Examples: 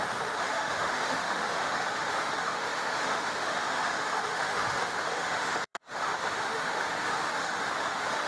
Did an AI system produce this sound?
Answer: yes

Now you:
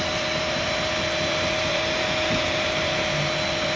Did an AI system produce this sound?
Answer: no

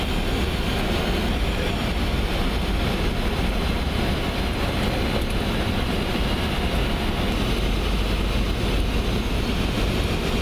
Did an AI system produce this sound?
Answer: no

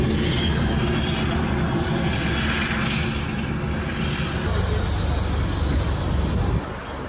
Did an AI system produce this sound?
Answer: no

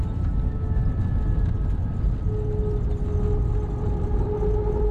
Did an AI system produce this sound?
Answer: no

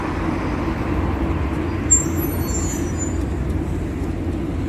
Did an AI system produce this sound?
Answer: no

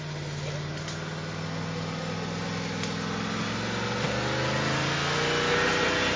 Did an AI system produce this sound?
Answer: no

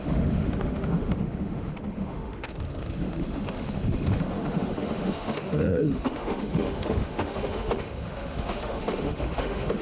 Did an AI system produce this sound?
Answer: yes